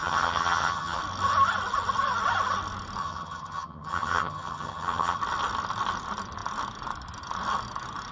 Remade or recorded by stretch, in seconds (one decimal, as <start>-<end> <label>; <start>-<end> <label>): 0.0-1.0 remade; 1.0-3.0 recorded; 3.0-5.2 remade; 5.2-8.1 recorded